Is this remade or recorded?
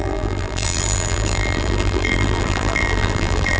remade